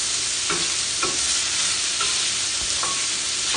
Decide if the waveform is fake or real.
real